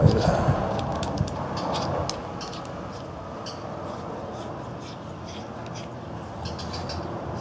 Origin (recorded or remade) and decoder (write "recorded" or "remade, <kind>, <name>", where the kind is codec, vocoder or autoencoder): recorded